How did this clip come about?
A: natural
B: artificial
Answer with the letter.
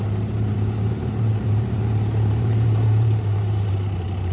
B